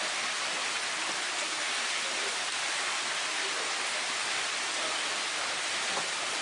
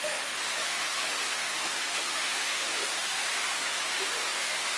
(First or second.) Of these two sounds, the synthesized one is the second